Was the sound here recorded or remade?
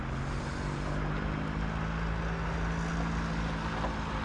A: recorded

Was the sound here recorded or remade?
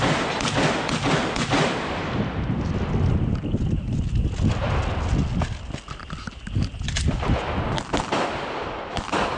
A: recorded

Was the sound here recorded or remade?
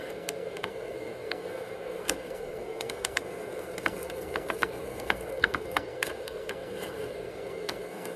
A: remade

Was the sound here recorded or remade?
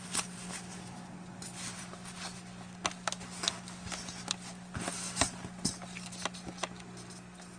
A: recorded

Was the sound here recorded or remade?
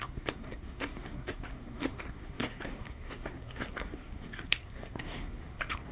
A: remade